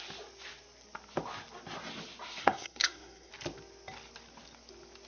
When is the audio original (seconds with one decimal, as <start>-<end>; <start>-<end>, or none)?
0.0-2.4; 3.3-5.1